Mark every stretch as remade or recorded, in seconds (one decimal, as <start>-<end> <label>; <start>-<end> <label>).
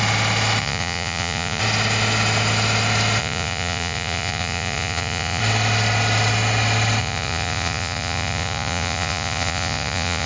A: 0.0-0.6 recorded; 0.6-1.6 remade; 1.6-3.2 recorded; 3.2-5.4 remade; 5.4-7.0 recorded; 7.0-10.3 remade